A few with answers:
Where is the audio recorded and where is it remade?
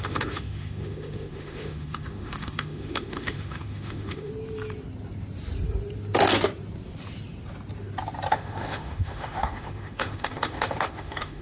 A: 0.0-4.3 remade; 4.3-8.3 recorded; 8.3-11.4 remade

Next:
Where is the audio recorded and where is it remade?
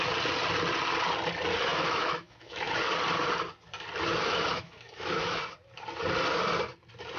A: 0.0-1.7 recorded; 1.7-2.8 remade; 2.8-4.1 recorded; 4.1-5.4 remade; 5.4-7.2 recorded